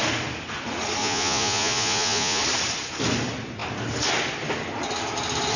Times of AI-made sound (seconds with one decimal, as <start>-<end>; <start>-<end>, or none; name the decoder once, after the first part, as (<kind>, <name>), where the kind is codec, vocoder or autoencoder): 1.0-2.4 (vocoder, Vocos)